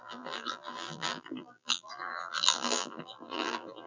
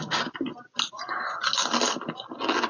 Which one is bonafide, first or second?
second